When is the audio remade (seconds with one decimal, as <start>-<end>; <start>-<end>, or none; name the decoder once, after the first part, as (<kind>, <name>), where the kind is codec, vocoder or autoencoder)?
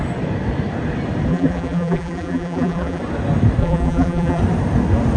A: 1.3-3.0 (vocoder, BigVGAN v2); 3.6-4.4